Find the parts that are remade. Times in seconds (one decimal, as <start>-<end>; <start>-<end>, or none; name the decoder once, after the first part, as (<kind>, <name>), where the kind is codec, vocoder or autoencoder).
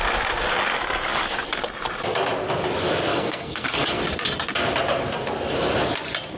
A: 3.1-4.0 (codec, SNAC)